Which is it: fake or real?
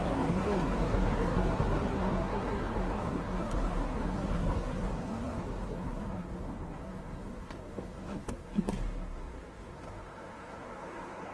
fake